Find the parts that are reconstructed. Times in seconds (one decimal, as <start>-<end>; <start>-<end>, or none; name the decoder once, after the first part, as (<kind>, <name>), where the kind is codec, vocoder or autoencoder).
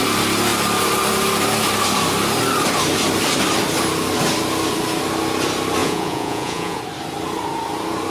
5.8-6.8 (vocoder, Vocos)